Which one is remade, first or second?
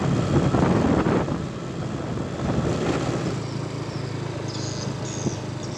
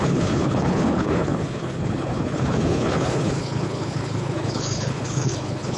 second